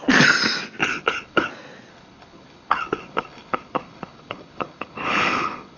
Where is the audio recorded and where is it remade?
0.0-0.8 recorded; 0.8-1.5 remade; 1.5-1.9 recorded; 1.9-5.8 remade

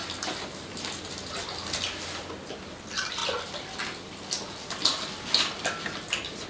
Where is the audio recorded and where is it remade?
0.0-6.5 recorded

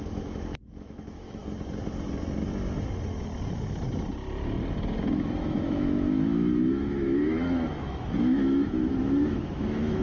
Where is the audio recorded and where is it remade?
0.0-1.4 remade; 1.4-5.0 recorded; 5.0-10.0 remade

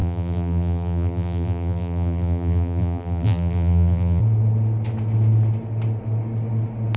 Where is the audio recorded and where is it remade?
0.0-4.2 remade; 4.2-7.0 recorded

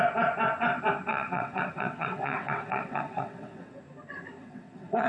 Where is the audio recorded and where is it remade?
0.0-1.1 recorded; 1.1-3.8 remade; 3.8-4.4 recorded; 4.4-5.1 remade

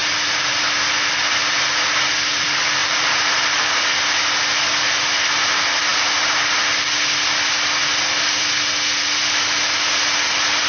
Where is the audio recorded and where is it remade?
0.0-0.6 remade; 0.6-2.8 recorded; 2.8-3.9 remade; 3.9-10.7 recorded

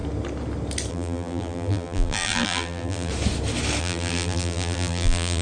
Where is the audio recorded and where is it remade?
0.0-0.9 recorded; 0.9-3.1 remade; 3.1-3.8 recorded; 3.8-5.4 remade